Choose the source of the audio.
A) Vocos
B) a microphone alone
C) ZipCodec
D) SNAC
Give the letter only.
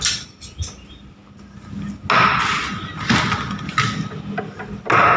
B